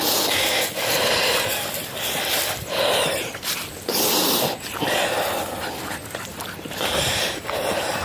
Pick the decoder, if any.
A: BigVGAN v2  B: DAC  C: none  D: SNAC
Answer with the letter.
C